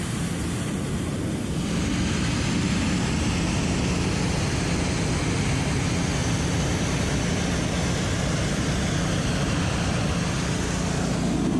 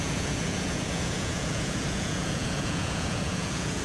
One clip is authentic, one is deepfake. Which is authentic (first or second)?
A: first